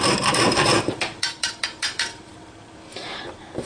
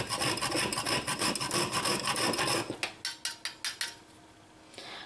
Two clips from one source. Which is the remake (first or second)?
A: first